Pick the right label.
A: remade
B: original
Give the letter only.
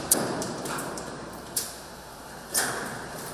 A